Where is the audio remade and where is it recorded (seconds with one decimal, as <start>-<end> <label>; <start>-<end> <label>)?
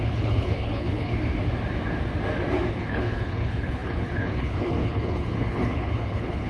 0.0-1.1 remade; 1.1-2.7 recorded; 2.7-6.5 remade